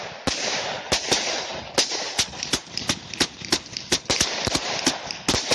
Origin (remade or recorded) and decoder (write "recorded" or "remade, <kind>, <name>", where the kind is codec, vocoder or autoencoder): recorded